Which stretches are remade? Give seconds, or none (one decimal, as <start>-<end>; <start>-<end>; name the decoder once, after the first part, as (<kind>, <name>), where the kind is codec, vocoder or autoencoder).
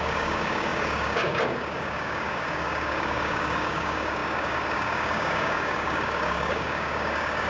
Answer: 0.0-7.5 (codec, DAC)